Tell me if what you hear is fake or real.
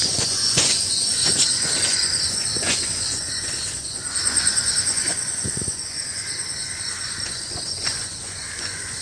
fake